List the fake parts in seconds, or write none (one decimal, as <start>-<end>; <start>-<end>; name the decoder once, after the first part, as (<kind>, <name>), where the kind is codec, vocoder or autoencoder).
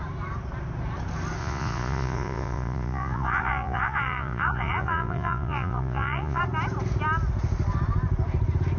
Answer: 1.4-6.4 (vocoder, Vocos)